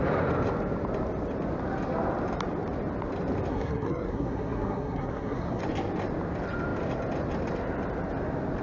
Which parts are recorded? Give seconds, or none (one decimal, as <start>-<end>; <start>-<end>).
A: 0.0-3.5; 5.6-8.6